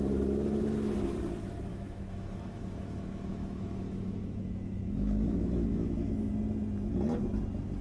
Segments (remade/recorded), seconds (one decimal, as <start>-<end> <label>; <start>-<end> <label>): 0.0-1.7 recorded; 1.7-6.3 remade; 6.3-7.8 recorded